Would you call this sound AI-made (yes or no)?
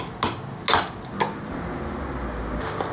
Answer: no